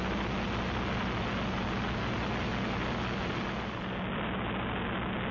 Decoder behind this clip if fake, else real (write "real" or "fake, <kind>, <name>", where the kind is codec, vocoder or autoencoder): real